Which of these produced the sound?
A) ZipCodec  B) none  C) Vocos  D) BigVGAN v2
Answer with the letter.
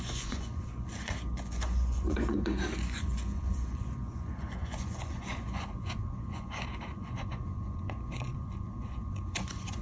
C